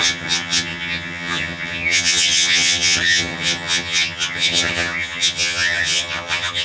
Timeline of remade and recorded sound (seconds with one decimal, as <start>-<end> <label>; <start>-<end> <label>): 0.0-6.6 remade